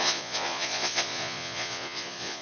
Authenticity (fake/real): fake